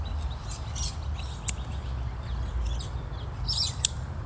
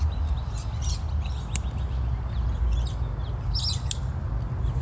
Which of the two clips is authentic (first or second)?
second